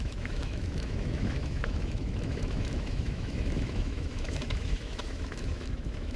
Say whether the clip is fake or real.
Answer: fake